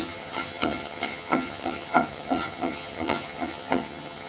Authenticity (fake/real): fake